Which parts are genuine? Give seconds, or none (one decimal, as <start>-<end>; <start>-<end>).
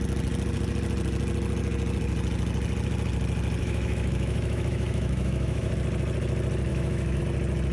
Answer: 0.0-3.6; 5.7-6.7; 7.2-7.7